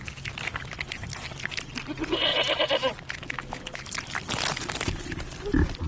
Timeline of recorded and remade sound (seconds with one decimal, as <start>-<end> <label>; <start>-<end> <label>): 0.0-2.3 recorded; 2.3-2.9 remade; 2.9-5.9 recorded